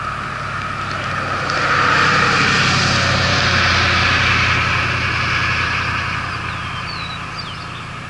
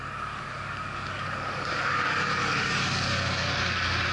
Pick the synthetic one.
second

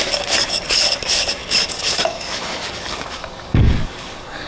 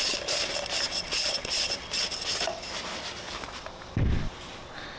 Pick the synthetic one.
first